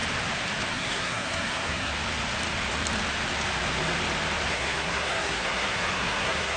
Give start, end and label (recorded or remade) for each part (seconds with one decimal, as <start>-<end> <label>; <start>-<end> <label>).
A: 0.0-0.7 recorded; 0.7-1.9 remade; 1.9-4.5 recorded; 4.5-6.6 remade

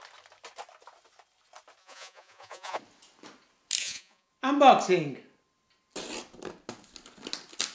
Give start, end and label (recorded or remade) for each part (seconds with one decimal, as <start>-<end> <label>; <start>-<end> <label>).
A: 0.0-1.8 recorded; 1.8-2.8 remade; 2.8-3.8 recorded; 3.8-4.3 remade; 4.3-7.7 recorded

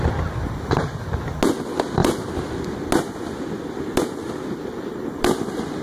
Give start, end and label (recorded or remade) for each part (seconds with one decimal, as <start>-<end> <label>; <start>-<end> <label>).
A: 0.0-5.8 recorded

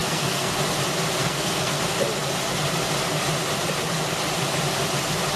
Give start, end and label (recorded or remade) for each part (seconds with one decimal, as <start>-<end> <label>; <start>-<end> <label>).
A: 0.0-0.5 remade; 0.5-1.2 recorded; 1.2-1.8 remade; 1.8-5.4 recorded

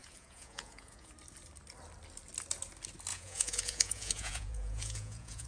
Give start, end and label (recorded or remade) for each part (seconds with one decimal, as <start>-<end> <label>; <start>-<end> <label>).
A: 0.0-1.1 remade; 1.1-3.1 recorded; 3.1-5.5 remade

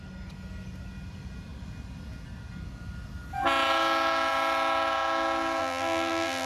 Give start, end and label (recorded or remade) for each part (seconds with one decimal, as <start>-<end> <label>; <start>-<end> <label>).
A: 0.0-5.6 recorded; 5.6-6.5 remade

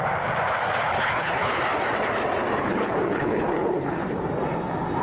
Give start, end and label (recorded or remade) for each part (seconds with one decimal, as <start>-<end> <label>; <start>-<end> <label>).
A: 0.0-0.9 recorded; 0.9-1.5 remade; 1.5-2.6 recorded; 2.6-4.1 remade; 4.1-5.0 recorded